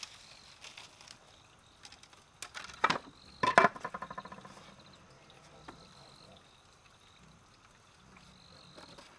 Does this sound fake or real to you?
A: real